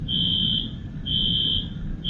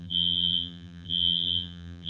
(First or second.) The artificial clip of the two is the second